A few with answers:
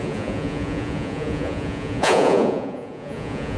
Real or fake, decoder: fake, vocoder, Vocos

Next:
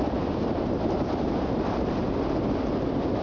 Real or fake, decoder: real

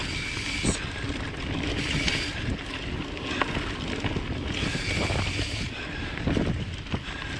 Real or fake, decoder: real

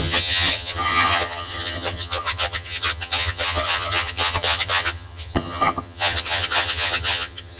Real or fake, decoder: fake, vocoder, HiFi-GAN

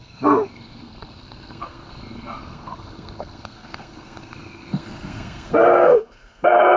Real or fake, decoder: fake, codec, SNAC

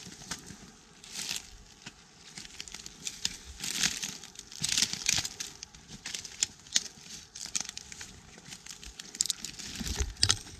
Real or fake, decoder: fake, vocoder, BigVGAN v2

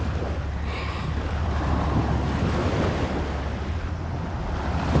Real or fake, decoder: real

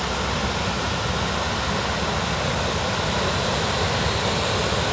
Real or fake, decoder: real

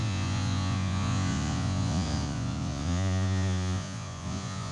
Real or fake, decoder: fake, vocoder, Vocos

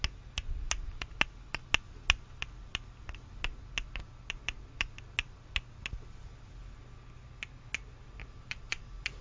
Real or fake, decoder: real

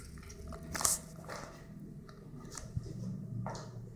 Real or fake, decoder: real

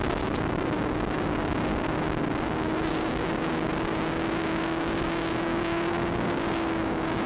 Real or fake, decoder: fake, codec, DAC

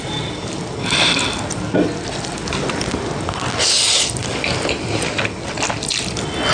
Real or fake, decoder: real